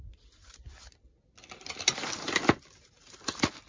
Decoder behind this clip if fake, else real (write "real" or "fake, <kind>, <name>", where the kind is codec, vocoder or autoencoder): real